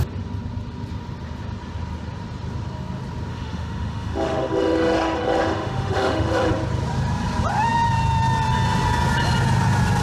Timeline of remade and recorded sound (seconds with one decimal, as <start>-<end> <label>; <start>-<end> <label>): 0.0-3.3 recorded; 3.3-6.5 remade; 6.5-10.0 recorded